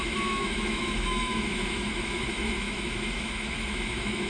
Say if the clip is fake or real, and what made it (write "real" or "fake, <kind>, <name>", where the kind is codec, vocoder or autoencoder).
fake, autoencoder, DAC-VAE